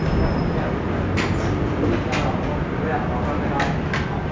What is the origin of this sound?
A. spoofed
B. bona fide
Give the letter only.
B